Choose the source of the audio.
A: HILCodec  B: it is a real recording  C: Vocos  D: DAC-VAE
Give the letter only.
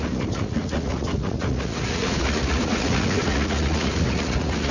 C